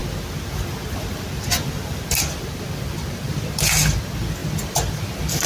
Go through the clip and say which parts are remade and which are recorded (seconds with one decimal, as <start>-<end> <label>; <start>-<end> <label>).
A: 0.0-4.4 recorded; 4.4-5.1 remade; 5.1-5.5 recorded